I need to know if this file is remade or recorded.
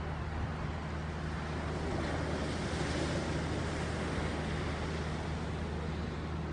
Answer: recorded